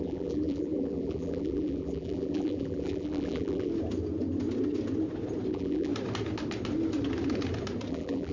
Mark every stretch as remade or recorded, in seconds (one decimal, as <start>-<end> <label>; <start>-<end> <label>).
0.0-3.7 remade; 3.7-5.5 recorded; 5.5-5.9 remade; 5.9-7.9 recorded; 7.9-8.3 remade